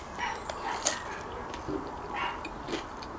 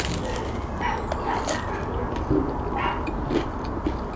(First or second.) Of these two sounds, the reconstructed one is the first